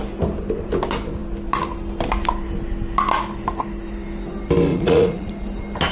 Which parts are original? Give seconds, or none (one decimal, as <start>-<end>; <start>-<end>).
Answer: 0.0-4.7; 5.4-5.9

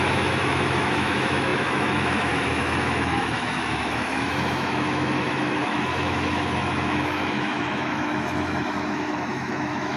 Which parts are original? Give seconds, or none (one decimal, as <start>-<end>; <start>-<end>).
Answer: none

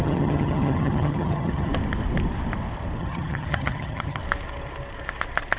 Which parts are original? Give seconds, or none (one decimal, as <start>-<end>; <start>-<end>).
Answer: 1.7-3.0; 4.2-5.6

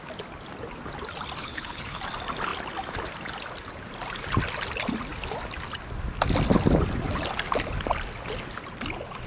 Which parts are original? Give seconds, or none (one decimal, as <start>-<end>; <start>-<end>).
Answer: 0.0-1.4; 2.0-9.3